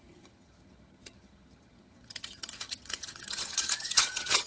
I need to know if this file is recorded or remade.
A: remade